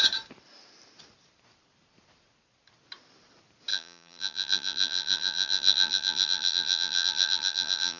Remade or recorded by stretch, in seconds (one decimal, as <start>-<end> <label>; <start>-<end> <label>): 0.0-3.7 recorded; 3.7-8.0 remade